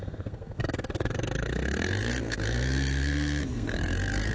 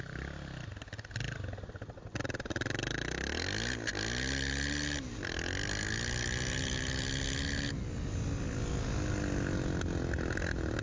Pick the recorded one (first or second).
second